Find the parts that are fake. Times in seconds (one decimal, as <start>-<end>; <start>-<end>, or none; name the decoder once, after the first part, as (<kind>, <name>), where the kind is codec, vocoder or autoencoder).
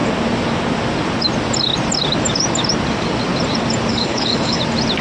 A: 3.9-4.6 (codec, HILCodec)